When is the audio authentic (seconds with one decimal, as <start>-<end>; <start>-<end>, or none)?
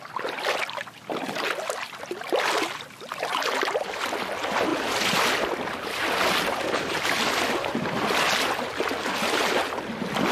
0.0-10.3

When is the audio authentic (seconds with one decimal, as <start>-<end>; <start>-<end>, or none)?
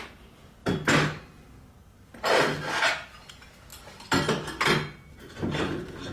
0.0-6.1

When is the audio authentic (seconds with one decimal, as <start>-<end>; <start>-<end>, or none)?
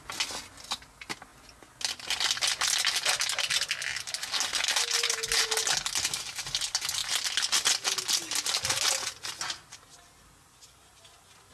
0.0-11.5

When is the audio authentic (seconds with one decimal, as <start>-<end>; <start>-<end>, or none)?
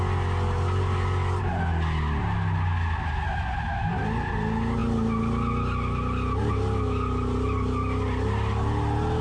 0.0-9.2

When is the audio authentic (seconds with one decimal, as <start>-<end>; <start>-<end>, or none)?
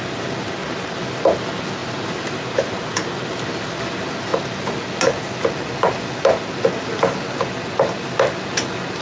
0.0-1.8; 2.8-9.0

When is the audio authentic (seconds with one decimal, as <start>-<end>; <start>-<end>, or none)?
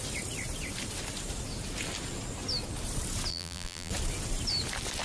0.0-3.3; 3.9-5.0